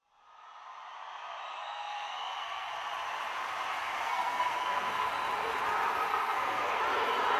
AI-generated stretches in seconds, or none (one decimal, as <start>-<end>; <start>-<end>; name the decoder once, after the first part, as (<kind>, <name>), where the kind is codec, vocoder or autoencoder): 1.5-2.7 (codec, SNAC); 3.8-5.1; 6.1-6.8